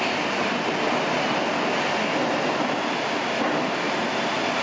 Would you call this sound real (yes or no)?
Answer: yes